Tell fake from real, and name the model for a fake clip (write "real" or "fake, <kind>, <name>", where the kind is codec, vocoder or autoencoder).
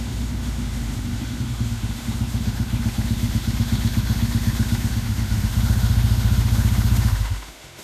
fake, autoencoder, DAC-VAE